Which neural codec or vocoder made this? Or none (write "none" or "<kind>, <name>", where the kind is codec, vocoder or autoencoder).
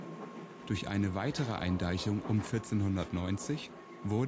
none